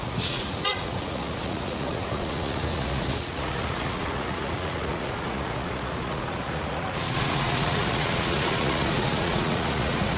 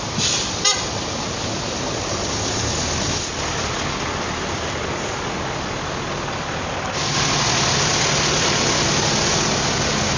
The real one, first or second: second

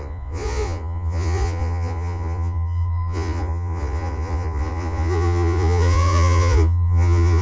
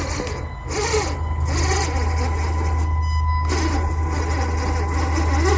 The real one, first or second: second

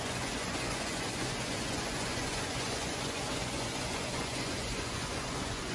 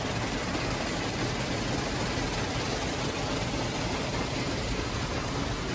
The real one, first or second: second